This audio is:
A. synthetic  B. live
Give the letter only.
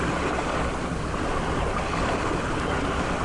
B